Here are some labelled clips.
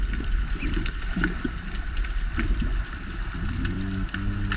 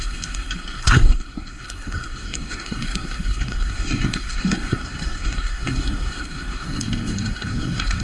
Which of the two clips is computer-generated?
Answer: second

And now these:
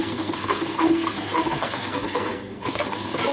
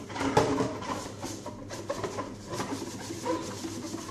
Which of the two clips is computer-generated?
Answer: first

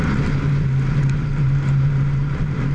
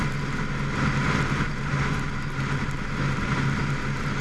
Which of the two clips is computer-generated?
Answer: first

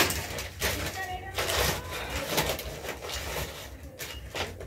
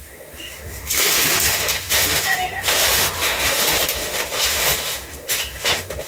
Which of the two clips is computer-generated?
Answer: second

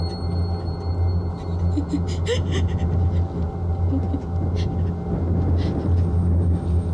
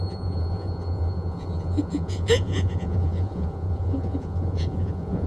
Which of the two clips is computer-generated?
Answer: second